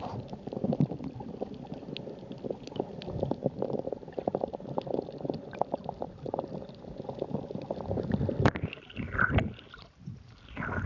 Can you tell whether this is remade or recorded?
recorded